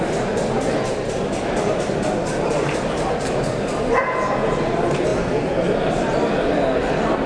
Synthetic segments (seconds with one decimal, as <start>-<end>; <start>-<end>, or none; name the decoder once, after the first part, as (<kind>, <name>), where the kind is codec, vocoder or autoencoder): none